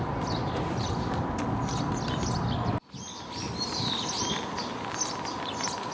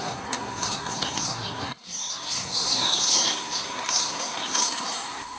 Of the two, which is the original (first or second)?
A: first